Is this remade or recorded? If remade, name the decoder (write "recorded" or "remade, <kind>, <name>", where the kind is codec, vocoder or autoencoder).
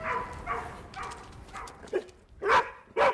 recorded